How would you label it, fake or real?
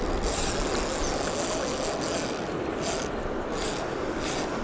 real